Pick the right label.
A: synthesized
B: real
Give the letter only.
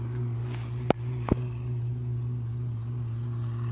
B